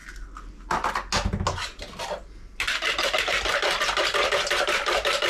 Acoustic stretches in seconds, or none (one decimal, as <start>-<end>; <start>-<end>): 0.0-5.3